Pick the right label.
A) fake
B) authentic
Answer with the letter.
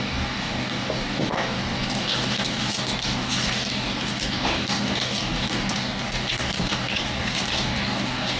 A